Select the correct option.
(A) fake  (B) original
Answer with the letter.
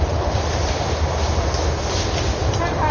B